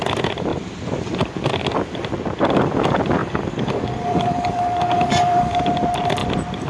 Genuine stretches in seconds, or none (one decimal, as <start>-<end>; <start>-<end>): 0.0-3.2; 5.6-6.7